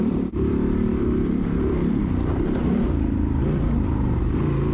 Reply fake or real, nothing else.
fake